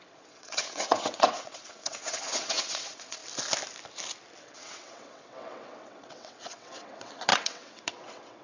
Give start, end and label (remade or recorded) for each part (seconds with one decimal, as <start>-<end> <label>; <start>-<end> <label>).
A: 0.0-3.2 remade; 3.2-4.4 recorded; 4.4-8.4 remade